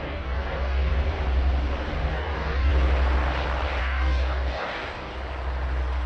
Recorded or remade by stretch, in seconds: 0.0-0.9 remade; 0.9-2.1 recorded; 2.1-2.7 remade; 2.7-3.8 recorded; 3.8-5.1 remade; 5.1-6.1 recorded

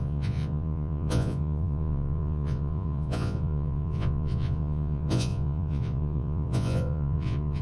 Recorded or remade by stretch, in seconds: 0.0-7.6 remade

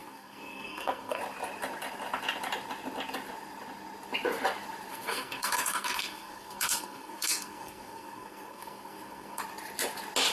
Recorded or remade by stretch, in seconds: 0.0-1.2 remade; 1.2-4.9 recorded; 4.9-9.4 remade; 9.4-10.3 recorded

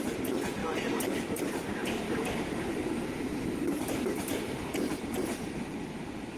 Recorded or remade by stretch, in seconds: 0.0-1.8 recorded; 1.8-4.4 remade; 4.4-6.4 recorded

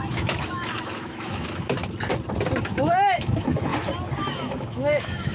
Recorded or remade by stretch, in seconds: 0.0-1.8 remade; 1.8-2.6 recorded; 2.6-3.7 remade; 3.7-4.3 recorded; 4.3-5.3 remade

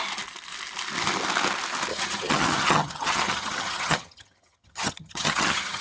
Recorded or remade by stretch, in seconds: 0.0-1.9 recorded; 1.9-5.8 remade

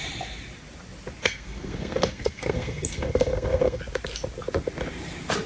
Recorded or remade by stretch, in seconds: 0.0-1.2 recorded; 1.2-3.8 remade; 3.8-5.5 recorded

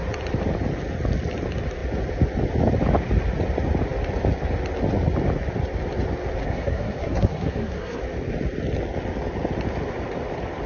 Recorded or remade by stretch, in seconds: 0.0-6.4 recorded; 6.4-8.0 remade; 8.0-10.7 recorded